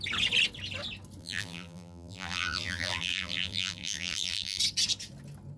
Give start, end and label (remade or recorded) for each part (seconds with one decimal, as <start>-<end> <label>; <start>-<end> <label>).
0.0-1.2 recorded; 1.2-4.6 remade; 4.6-5.6 recorded